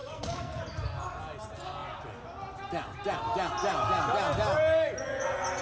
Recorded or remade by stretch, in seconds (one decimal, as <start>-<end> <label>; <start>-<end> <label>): 0.0-0.6 remade; 0.6-5.6 recorded